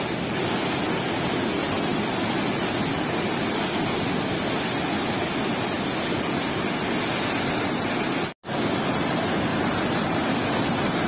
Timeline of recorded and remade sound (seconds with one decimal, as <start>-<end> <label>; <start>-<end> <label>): 0.0-9.5 recorded; 9.5-10.3 remade; 10.3-11.1 recorded